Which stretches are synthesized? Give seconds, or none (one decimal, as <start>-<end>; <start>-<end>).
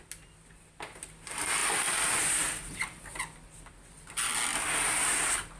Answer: none